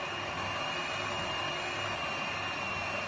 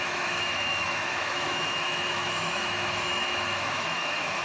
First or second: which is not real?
second